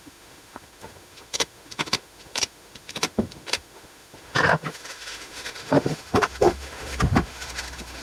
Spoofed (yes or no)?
yes